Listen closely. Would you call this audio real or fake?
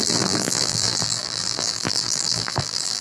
fake